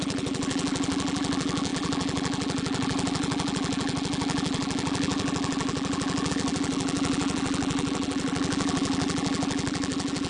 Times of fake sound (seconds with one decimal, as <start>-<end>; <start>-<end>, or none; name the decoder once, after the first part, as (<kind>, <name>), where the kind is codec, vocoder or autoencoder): 0.0-10.3 (vocoder, BigVGAN v2)